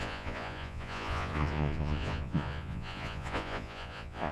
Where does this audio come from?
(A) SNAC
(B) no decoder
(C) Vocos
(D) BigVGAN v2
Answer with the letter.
C